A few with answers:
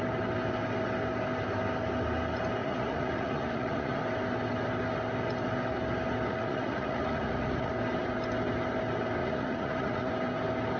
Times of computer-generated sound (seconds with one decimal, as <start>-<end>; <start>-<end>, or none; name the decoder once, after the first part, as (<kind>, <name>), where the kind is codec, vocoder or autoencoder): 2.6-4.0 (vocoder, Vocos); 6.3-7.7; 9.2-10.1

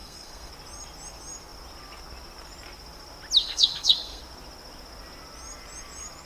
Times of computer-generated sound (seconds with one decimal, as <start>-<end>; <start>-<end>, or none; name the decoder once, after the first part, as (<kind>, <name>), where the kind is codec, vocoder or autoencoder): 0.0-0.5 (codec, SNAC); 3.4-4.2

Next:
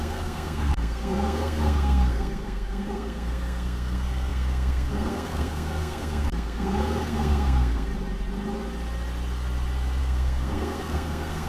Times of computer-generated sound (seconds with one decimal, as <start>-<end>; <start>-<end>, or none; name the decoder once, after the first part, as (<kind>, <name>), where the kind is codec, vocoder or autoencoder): 0.0-7.9 (codec, SNAC); 10.0-11.5

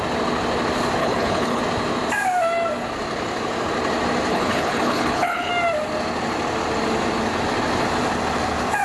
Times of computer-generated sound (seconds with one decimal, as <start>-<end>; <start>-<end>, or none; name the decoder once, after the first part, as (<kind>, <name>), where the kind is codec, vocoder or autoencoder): 1.0-1.6 (codec, HILCodec); 4.3-5.5

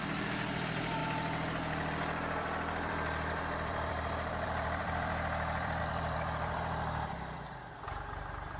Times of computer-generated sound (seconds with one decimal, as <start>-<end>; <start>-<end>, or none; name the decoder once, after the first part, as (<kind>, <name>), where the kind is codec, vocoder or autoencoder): 0.0-8.6 (vocoder, BigVGAN v2)